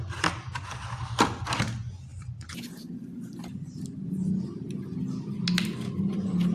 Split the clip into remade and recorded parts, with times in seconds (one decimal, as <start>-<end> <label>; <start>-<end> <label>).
0.0-6.5 recorded

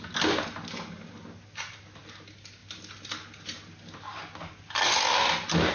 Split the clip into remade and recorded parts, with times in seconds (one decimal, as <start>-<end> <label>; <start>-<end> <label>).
0.0-5.7 recorded

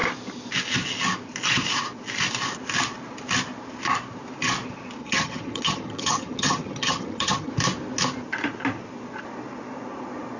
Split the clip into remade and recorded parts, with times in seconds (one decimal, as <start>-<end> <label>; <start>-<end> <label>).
0.0-5.0 recorded; 5.0-7.5 remade; 7.5-10.4 recorded

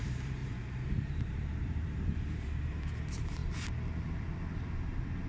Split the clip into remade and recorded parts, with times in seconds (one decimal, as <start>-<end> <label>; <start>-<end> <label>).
0.0-3.4 remade; 3.4-4.8 recorded; 4.8-5.3 remade